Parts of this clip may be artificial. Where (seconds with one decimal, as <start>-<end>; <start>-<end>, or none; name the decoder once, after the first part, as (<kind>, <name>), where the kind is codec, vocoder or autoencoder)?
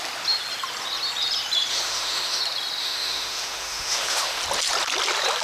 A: 1.7-2.4 (autoencoder, DAC-VAE); 2.8-4.4